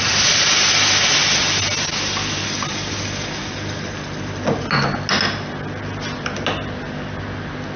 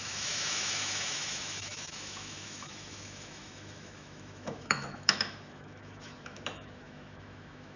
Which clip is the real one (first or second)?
first